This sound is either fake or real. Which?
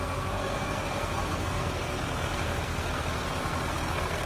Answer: fake